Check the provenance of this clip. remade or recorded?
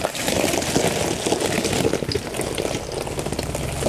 recorded